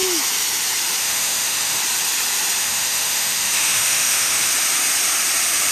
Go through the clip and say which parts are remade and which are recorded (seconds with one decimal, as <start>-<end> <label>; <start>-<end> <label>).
0.0-1.0 recorded; 1.0-1.8 remade; 1.8-2.6 recorded; 2.6-4.5 remade; 4.5-5.7 recorded